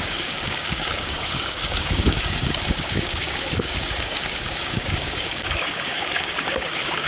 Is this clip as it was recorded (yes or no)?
no